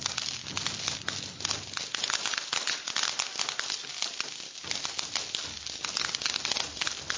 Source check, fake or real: real